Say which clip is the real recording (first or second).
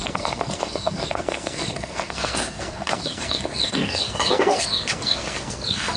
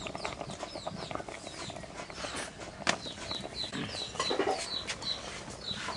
second